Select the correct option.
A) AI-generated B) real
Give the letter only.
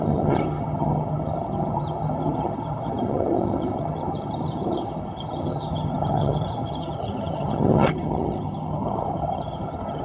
A